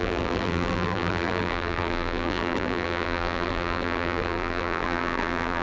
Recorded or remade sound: remade